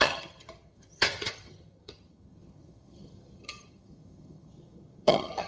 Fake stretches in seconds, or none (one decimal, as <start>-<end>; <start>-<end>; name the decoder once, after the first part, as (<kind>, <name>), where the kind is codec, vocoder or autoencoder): 0.0-5.5 (vocoder, HiFi-GAN)